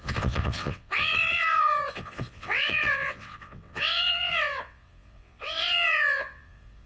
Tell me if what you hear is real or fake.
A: fake